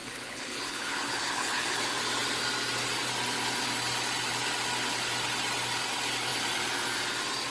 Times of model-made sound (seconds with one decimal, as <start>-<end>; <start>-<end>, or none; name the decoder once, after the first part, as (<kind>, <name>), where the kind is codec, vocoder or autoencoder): 0.0-1.8 (codec, HILCodec)